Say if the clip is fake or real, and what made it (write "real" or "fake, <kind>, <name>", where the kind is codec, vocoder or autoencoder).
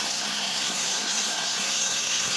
fake, codec, SNAC